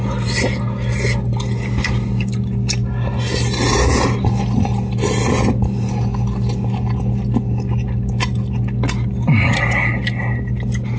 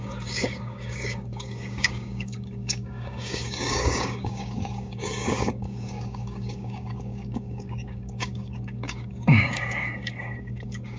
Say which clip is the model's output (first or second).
second